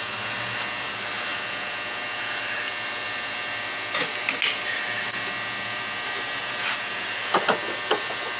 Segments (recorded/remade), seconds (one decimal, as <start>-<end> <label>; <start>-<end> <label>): 0.0-8.4 recorded